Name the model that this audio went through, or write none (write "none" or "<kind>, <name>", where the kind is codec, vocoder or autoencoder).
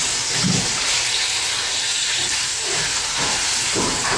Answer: none